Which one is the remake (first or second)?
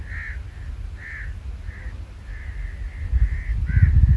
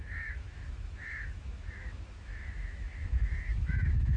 second